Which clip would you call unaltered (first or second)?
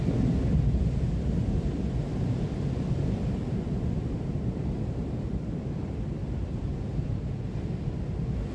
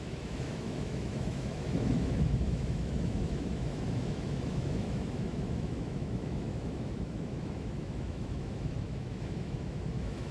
first